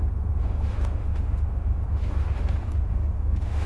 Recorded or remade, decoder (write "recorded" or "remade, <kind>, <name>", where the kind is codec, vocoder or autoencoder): remade, autoencoder, DAC-VAE